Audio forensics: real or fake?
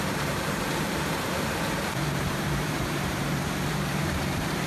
fake